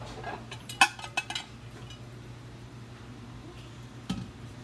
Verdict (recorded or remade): recorded